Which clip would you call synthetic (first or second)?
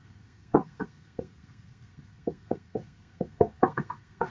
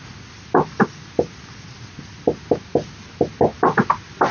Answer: first